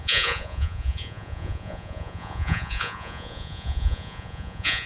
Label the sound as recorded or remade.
remade